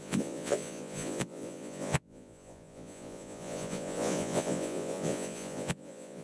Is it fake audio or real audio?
fake